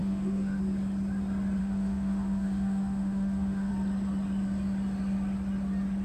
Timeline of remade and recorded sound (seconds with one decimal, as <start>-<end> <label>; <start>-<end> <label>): 0.0-0.6 remade; 0.6-1.6 recorded; 1.6-3.7 remade; 3.7-6.0 recorded